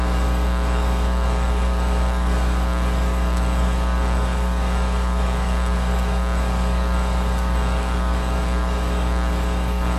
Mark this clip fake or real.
fake